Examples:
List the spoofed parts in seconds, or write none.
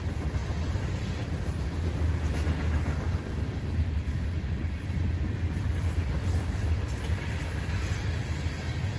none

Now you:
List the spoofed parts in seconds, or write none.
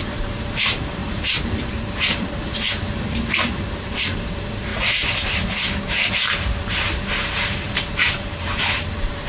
0.0-9.3 (vocoder, BigVGAN v2)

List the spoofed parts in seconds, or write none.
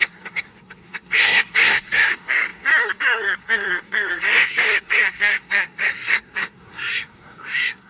0.0-7.9 (codec, SNAC)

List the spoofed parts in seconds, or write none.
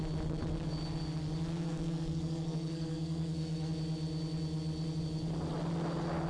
1.5-3.7 (codec, SNAC)